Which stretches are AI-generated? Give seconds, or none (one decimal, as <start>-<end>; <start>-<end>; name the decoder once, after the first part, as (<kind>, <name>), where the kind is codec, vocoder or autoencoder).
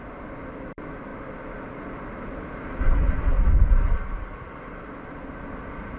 none